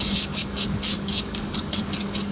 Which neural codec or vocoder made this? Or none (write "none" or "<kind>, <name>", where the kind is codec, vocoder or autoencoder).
codec, DAC